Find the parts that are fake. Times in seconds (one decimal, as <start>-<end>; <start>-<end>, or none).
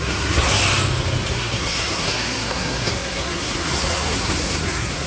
0.0-0.6; 1.3-5.1